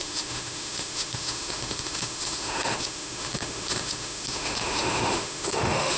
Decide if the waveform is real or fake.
fake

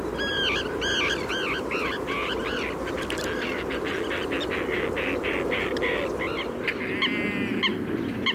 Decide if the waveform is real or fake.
real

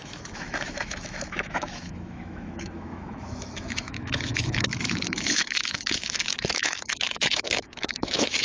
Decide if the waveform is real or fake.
fake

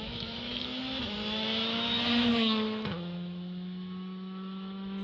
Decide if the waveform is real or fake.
fake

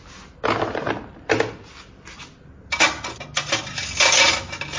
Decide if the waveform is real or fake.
real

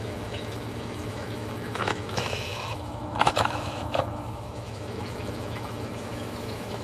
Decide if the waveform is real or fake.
fake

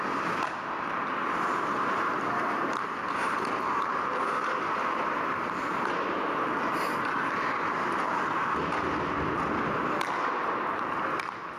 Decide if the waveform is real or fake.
real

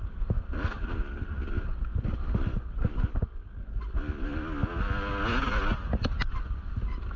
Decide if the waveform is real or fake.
real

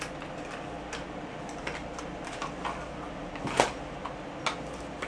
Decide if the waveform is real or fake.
real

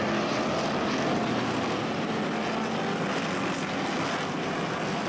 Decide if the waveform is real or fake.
real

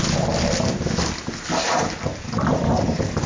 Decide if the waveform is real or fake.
real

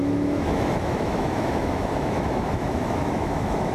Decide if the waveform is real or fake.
fake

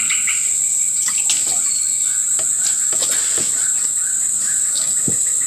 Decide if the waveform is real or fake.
real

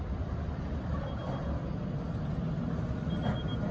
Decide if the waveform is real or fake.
real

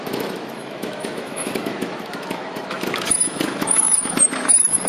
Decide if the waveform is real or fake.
fake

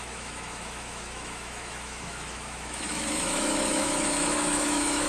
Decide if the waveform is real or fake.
fake